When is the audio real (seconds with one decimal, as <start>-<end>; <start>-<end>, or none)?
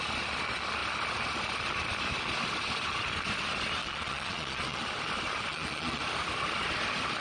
0.0-3.8; 4.8-5.5; 6.0-7.2